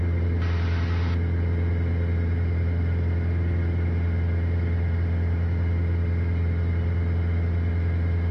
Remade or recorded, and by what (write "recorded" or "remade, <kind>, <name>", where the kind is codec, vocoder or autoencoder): recorded